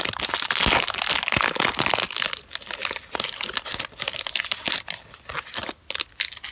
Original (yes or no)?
yes